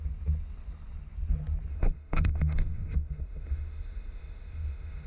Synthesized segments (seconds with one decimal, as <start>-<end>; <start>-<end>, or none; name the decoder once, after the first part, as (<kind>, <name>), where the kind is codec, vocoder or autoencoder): 1.7-5.1 (autoencoder, DAC-VAE)